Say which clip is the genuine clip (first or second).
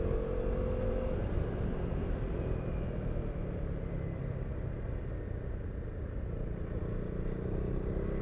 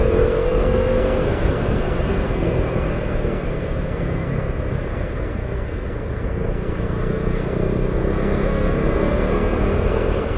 first